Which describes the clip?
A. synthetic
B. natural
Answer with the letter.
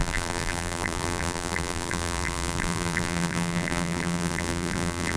A